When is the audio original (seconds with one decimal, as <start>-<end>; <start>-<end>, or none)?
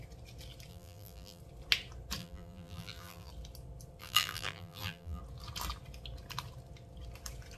0.0-0.7; 1.4-2.2; 3.3-4.0; 5.2-7.6